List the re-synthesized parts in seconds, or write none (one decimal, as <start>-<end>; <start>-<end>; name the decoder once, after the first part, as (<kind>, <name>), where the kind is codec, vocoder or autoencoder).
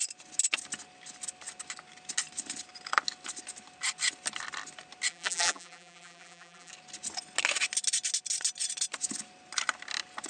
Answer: 5.1-6.7 (vocoder, BigVGAN v2)